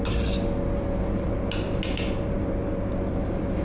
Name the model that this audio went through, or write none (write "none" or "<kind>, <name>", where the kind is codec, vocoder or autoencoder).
none